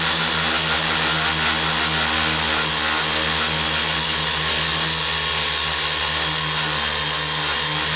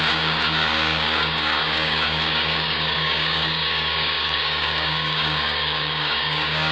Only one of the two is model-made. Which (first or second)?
second